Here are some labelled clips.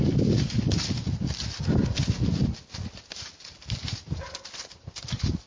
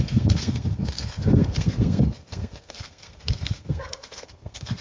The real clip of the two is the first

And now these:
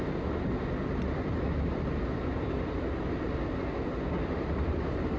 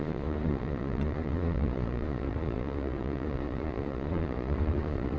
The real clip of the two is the first